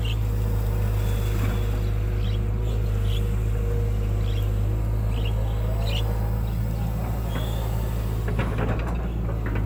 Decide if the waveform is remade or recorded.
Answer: recorded